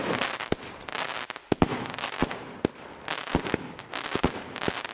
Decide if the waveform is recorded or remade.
recorded